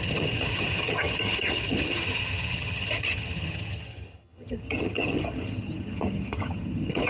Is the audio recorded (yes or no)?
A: no